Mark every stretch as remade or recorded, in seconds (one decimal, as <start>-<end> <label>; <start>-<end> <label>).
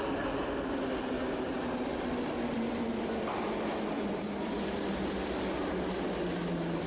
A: 0.0-1.9 recorded; 1.9-4.8 remade; 4.8-6.9 recorded